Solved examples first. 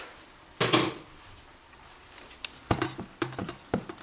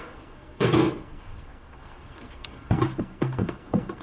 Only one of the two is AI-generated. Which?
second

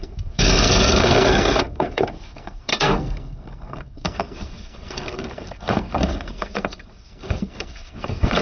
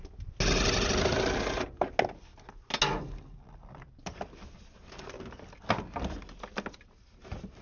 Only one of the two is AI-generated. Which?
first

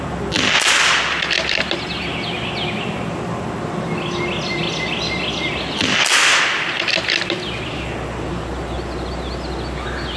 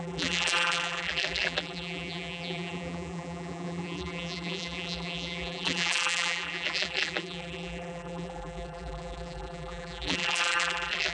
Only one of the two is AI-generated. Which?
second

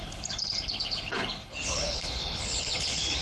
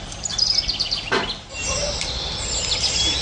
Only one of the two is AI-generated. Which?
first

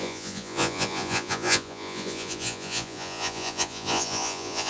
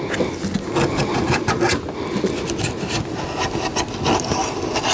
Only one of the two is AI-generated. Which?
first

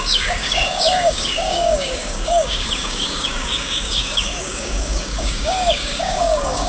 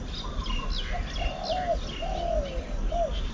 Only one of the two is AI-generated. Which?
first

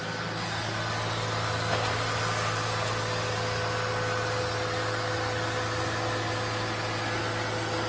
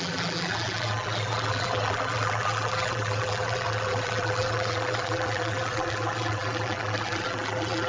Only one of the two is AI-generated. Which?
second